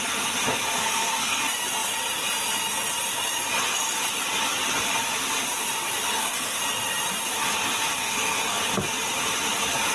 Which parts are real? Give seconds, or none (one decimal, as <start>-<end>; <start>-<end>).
0.0-0.8; 1.4-6.1; 6.6-8.0; 8.6-9.9